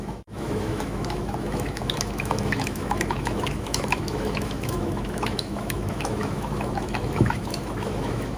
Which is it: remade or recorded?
remade